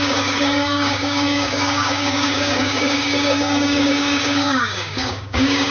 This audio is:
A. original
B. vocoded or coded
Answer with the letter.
B